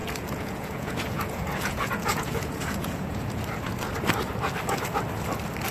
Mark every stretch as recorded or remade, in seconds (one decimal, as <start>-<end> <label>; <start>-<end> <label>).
0.0-3.4 remade; 3.4-5.7 recorded